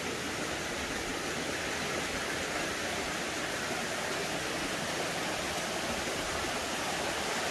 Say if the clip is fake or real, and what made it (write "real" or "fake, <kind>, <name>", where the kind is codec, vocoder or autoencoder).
real